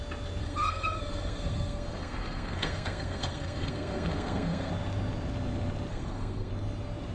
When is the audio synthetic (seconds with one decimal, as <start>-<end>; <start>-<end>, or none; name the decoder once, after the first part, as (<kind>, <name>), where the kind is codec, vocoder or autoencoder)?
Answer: 0.4-4.7 (codec, SNAC); 5.9-6.5